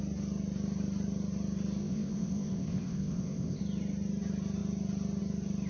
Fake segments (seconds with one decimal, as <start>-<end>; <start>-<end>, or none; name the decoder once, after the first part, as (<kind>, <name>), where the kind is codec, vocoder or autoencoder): 1.8-3.6 (codec, ZipCodec)